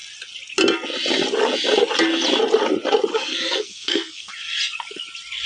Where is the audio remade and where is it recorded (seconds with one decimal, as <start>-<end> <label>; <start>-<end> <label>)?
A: 0.0-3.1 recorded; 3.1-4.3 remade; 4.3-5.5 recorded